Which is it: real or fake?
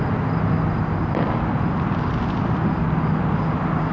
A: real